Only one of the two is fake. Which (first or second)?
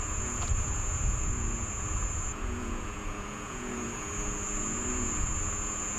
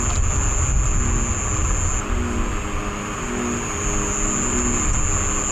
first